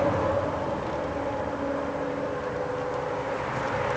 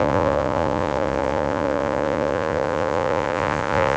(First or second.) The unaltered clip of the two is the first